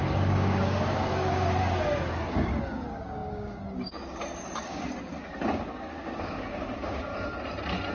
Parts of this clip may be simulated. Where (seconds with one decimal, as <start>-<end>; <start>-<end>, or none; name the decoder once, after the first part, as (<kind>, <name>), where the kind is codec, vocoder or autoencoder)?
0.0-7.1 (codec, DAC)